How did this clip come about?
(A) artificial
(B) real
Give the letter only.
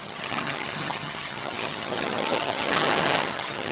A